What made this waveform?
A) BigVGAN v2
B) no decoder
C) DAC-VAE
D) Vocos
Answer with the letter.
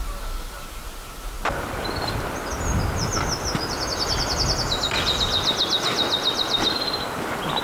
B